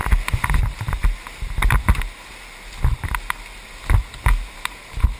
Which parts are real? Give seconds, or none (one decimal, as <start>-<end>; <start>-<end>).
0.0-5.2